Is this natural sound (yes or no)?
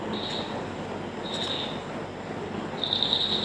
yes